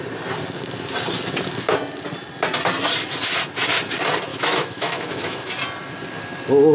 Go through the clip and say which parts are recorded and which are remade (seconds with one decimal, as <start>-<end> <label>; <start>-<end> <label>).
0.0-4.3 recorded; 4.3-5.5 remade; 5.5-6.7 recorded